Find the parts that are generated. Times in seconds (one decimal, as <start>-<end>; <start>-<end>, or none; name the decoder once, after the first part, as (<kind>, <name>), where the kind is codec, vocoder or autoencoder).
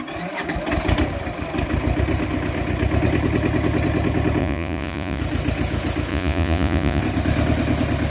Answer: 4.4-5.2 (vocoder, Vocos); 6.1-7.0